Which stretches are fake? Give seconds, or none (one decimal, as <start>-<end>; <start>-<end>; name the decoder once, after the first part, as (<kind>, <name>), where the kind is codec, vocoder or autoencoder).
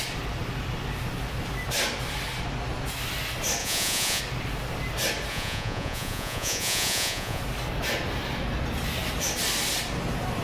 3.6-4.2 (vocoder, Vocos); 5.3-7.4